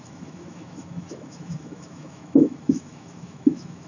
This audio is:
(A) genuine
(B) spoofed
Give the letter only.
B